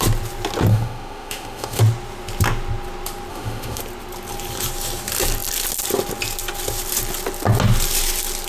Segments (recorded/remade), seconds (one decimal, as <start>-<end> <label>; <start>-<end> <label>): 0.0-0.7 recorded; 0.7-1.8 remade; 1.8-3.3 recorded; 3.3-3.8 remade; 3.8-8.5 recorded